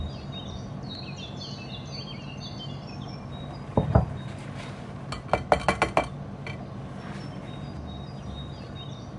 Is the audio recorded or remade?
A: recorded